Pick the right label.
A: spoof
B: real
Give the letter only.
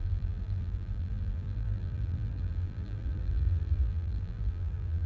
A